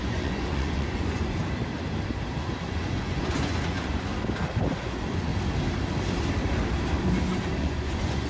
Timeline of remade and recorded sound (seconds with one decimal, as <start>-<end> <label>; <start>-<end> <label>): 0.0-1.4 remade; 1.4-2.6 recorded; 2.6-4.1 remade; 4.1-4.8 recorded; 4.8-5.3 remade; 5.3-7.6 recorded; 7.6-8.3 remade